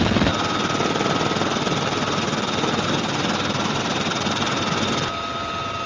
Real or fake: real